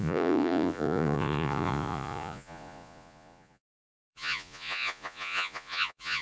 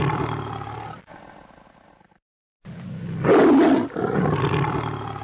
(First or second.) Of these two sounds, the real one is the second